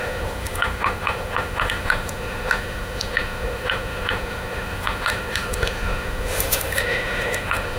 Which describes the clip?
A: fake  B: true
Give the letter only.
A